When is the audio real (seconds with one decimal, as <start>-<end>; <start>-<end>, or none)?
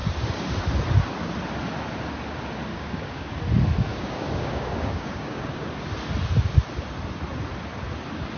0.0-2.7; 3.3-3.9; 5.8-8.4